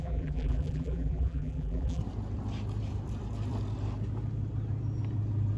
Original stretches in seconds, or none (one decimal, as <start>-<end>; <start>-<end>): 2.0-5.6

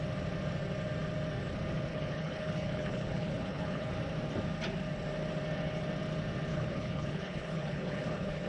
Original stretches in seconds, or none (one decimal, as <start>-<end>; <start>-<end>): 0.0-1.9; 3.9-6.5